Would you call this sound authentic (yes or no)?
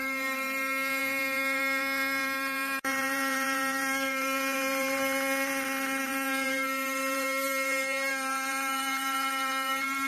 no